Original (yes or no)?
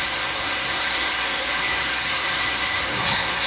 no